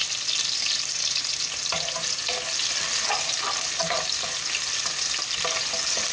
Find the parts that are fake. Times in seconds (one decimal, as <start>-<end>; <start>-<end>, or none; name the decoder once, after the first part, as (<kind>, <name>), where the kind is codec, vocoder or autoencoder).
none